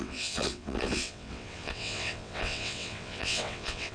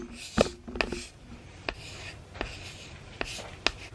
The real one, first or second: second